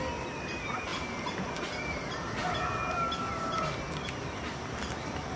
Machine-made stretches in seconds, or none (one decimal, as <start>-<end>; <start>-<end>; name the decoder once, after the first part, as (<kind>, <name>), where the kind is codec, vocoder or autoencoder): none